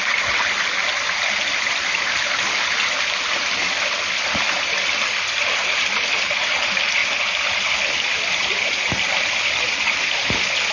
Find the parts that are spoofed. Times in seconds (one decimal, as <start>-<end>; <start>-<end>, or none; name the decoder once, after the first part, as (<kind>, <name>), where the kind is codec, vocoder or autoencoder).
none

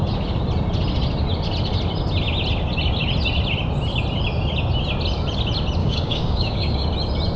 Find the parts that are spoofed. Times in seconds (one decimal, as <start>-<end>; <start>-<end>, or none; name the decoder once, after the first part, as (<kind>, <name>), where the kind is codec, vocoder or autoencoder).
5.8-6.9 (codec, DAC)

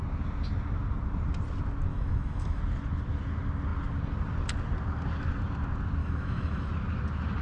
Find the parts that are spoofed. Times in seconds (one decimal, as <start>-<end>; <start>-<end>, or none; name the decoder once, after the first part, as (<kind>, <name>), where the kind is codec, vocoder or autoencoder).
1.9-2.6 (autoencoder, DAC-VAE); 6.0-6.7

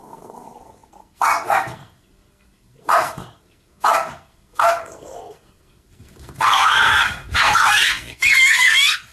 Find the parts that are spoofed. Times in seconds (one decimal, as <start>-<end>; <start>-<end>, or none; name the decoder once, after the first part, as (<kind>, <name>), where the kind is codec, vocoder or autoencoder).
0.0-9.1 (codec, SNAC)

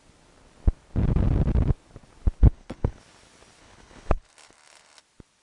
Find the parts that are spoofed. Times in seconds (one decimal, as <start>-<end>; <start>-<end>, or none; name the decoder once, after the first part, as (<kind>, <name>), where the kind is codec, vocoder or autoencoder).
2.4-3.0 (codec, HILCodec); 3.6-5.0

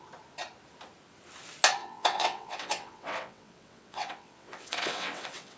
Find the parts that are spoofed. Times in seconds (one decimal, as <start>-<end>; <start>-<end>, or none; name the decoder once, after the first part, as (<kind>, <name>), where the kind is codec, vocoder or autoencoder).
1.8-5.6 (vocoder, WaveNeXt)

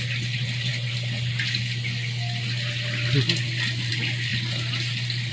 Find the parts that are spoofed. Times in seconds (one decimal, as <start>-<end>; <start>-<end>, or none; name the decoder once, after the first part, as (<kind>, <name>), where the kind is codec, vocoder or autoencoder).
none

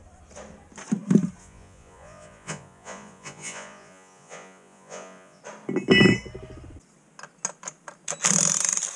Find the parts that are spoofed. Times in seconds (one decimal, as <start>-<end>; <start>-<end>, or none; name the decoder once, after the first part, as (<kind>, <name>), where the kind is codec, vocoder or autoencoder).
1.4-5.4 (vocoder, Vocos)